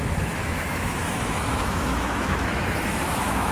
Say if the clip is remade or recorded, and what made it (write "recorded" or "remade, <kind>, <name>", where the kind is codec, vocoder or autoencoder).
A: remade, autoencoder, DAC-VAE